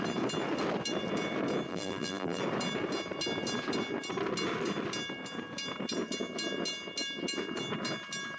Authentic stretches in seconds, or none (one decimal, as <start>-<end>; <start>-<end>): 0.0-1.7; 2.4-8.4